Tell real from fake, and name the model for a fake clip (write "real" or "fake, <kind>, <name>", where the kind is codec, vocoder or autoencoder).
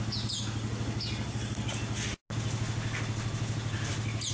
real